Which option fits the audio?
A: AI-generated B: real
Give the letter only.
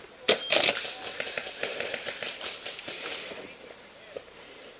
B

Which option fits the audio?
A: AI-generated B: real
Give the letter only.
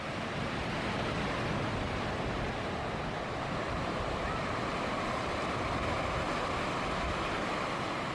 B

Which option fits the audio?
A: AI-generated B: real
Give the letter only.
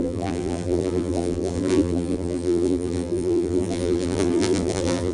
A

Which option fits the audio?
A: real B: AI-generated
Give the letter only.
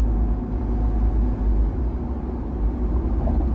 A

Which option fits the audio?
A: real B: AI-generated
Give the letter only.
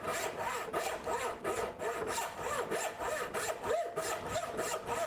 A